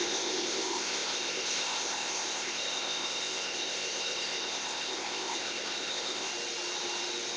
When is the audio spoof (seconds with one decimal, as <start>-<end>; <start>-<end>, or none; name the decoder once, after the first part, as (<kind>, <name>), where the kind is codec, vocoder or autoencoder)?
0.0-6.3 (codec, ZipCodec)